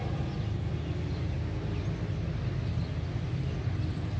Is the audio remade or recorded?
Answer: recorded